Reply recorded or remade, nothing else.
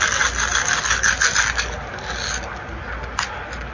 recorded